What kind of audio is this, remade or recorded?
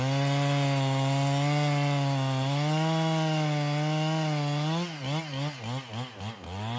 recorded